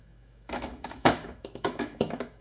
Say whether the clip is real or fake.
fake